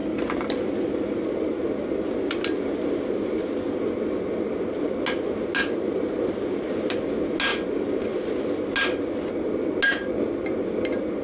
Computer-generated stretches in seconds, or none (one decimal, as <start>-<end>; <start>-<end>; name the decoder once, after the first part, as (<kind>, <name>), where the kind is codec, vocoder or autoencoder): none